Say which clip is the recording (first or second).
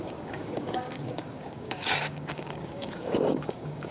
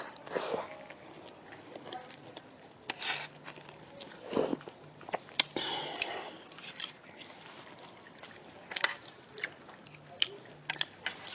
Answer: second